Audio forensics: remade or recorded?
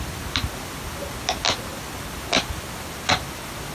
recorded